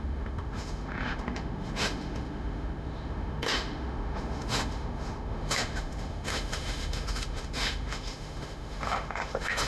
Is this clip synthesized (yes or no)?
yes